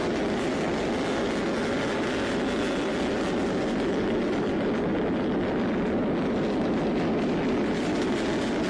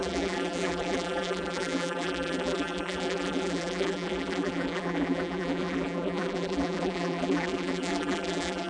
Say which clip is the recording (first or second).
first